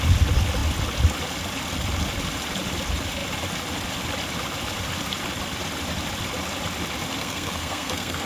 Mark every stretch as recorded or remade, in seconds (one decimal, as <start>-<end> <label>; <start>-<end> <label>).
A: 0.0-7.2 recorded; 7.2-8.3 remade

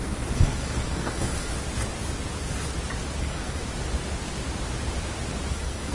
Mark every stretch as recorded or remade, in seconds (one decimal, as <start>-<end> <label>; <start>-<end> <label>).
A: 0.0-1.5 remade; 1.5-3.2 recorded; 3.2-3.6 remade; 3.6-5.5 recorded; 5.5-5.9 remade

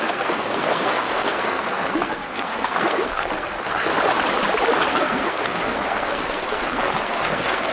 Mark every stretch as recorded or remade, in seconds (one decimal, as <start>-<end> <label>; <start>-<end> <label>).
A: 0.0-3.9 remade; 3.9-4.8 recorded; 4.8-7.7 remade

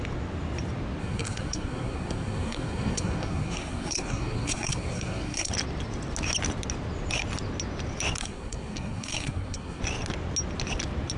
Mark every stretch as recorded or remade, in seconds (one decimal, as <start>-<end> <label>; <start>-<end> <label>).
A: 0.0-1.0 recorded; 1.0-5.5 remade; 5.5-8.2 recorded; 8.2-9.8 remade; 9.8-11.2 recorded

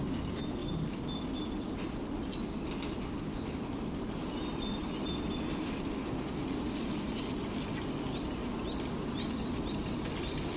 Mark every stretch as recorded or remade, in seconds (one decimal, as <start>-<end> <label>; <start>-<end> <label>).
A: 0.0-10.6 recorded